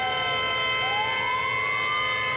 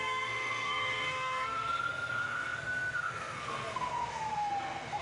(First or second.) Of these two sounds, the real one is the first